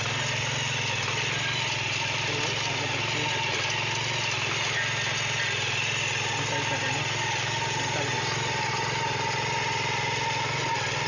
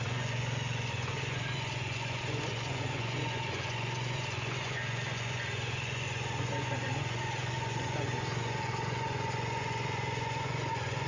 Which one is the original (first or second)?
first